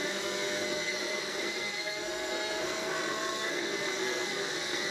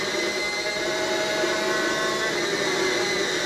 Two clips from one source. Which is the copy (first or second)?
first